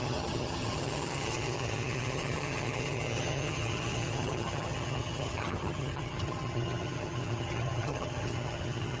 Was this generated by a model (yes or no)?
yes